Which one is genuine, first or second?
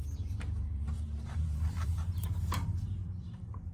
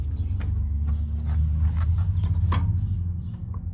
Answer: second